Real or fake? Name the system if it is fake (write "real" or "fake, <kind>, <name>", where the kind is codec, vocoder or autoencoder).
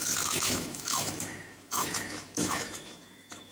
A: fake, autoencoder, DAC-VAE